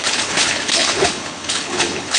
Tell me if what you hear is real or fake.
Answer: fake